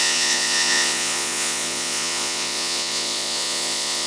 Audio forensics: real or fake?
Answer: fake